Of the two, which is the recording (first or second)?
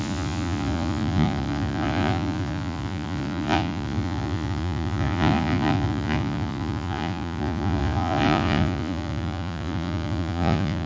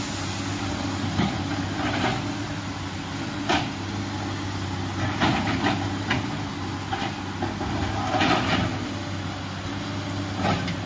second